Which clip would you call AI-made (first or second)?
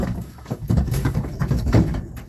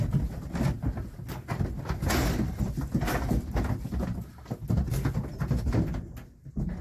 first